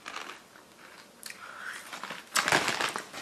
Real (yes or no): yes